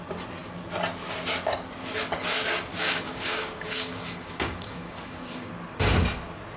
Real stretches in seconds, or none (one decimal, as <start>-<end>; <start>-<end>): 0.0-2.7; 5.5-6.6